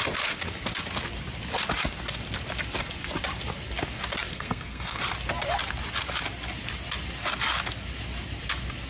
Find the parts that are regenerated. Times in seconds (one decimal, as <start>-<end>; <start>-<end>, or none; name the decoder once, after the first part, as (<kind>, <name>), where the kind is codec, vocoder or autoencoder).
4.3-5.0 (codec, SNAC)